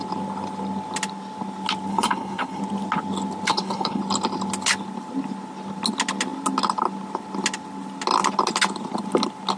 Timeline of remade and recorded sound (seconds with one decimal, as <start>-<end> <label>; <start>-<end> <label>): 0.0-1.9 recorded; 1.9-2.6 remade; 2.6-3.5 recorded; 3.5-4.0 remade; 4.0-9.6 recorded